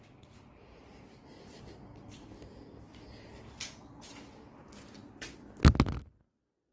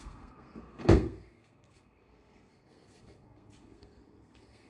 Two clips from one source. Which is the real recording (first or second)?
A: first